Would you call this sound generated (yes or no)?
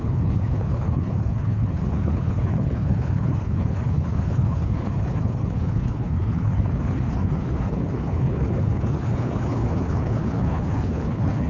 yes